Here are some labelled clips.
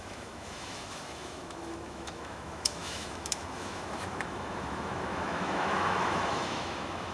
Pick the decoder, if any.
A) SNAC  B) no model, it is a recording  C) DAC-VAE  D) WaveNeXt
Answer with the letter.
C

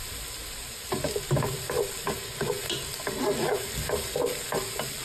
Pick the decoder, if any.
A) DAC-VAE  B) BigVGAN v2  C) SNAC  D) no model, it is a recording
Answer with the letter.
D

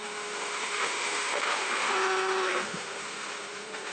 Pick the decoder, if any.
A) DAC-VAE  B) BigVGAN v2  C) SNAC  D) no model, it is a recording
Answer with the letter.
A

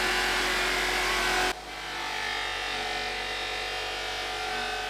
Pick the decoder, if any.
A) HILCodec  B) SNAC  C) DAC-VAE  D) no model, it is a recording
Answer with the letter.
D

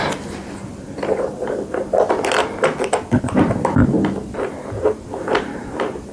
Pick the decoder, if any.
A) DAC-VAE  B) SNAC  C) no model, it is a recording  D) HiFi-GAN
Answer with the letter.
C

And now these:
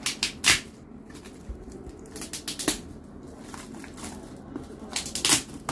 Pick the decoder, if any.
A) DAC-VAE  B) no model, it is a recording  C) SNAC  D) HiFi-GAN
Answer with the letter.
B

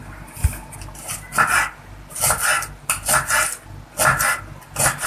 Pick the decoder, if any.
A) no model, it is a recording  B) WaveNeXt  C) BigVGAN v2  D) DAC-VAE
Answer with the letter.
A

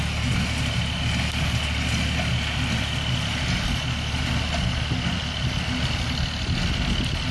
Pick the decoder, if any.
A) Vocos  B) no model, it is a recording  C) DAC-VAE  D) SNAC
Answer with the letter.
B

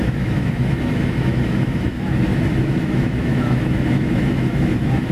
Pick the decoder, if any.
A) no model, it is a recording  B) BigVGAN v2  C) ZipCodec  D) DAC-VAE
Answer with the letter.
D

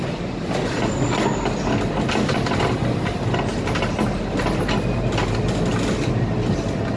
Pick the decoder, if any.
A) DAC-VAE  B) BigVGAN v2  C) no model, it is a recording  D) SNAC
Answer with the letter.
C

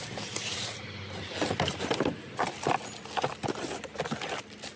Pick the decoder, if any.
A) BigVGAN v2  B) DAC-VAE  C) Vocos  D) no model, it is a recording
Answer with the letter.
D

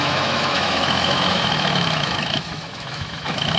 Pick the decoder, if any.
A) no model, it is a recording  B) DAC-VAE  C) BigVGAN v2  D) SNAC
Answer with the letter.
B